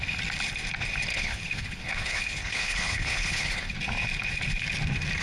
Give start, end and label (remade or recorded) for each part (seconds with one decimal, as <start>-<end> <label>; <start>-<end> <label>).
0.0-1.1 recorded; 1.1-3.7 remade; 3.7-5.2 recorded